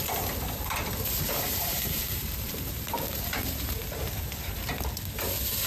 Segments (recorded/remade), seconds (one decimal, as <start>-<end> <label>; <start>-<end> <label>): 0.0-1.3 recorded; 1.3-4.7 remade; 4.7-5.7 recorded